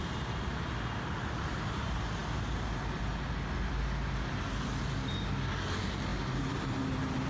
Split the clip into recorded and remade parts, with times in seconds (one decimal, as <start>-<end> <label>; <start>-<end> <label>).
0.0-7.3 recorded